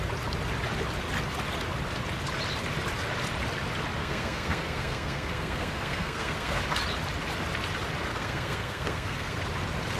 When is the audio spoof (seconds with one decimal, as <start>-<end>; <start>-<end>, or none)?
4.0-6.6; 8.1-9.4